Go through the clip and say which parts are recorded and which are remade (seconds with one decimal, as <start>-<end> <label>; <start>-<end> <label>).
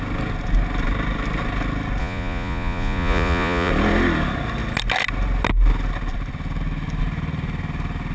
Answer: 0.0-2.0 recorded; 2.0-3.7 remade; 3.7-8.1 recorded